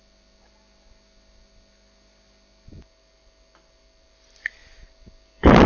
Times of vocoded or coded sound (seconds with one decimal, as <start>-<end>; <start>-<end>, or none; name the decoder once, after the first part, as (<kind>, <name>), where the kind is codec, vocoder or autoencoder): none